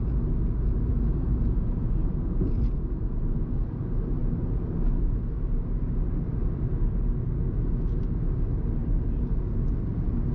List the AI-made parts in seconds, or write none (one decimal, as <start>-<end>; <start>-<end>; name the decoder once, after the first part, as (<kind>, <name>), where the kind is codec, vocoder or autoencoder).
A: 0.9-3.6 (vocoder, Vocos)